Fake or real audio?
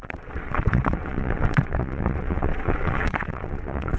fake